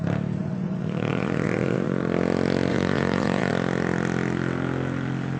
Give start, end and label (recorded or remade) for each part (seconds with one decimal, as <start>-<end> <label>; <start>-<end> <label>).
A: 0.0-0.4 recorded; 0.4-2.0 remade; 2.0-2.7 recorded; 2.7-3.5 remade; 3.5-5.4 recorded